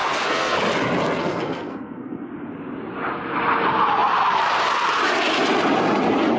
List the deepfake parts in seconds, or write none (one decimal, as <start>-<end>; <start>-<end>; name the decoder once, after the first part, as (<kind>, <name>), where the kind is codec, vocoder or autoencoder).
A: 0.0-0.6 (codec, SNAC); 1.2-2.3